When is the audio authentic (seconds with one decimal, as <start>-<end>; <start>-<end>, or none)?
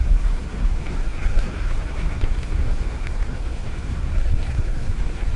none